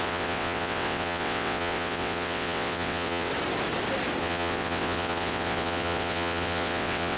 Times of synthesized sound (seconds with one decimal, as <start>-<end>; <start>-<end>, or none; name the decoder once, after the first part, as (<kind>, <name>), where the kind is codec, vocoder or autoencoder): 0.0-3.3 (vocoder, WaveNeXt); 4.2-7.2